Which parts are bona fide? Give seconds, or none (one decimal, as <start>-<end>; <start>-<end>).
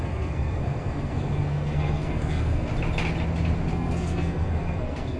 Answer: 2.7-3.7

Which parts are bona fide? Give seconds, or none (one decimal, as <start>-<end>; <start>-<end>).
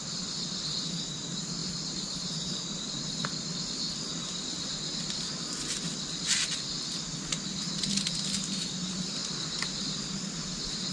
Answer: 0.0-10.9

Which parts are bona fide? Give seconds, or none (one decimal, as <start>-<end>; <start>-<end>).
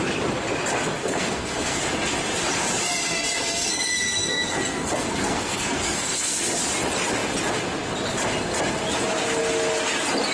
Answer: 0.0-1.0; 1.8-2.9; 6.5-10.3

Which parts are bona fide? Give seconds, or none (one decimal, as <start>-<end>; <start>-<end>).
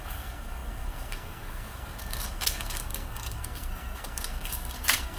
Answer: none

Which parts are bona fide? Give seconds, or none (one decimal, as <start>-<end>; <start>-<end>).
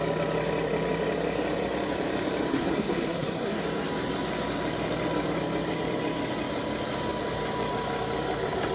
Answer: 0.0-2.5; 3.6-8.7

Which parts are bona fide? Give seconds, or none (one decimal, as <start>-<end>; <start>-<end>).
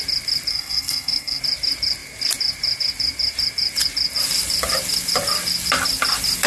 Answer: 0.0-0.5; 1.4-6.5